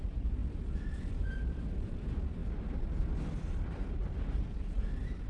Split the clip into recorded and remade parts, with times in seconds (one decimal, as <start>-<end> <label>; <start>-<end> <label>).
0.0-5.3 remade

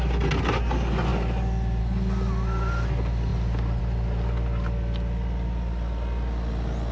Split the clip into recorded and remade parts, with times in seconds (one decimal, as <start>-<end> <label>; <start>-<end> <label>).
0.0-6.9 recorded